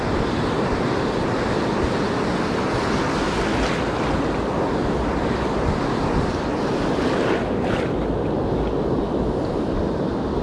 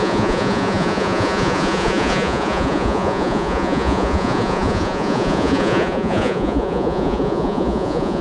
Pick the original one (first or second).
first